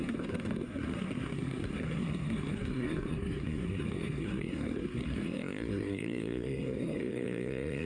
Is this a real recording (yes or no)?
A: no